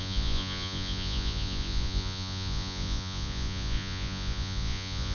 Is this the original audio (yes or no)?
no